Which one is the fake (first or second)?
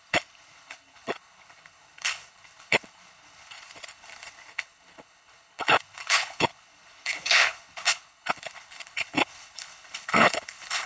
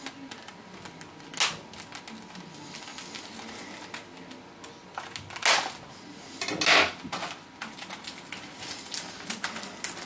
first